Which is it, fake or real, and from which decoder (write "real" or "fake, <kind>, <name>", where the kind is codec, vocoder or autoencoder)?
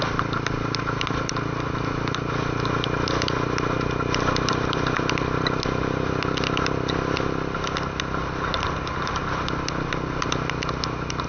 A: real